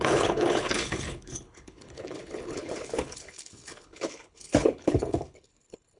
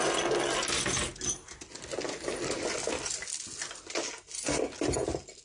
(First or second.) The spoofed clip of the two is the first